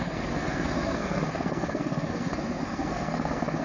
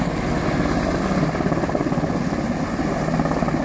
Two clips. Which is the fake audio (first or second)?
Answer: first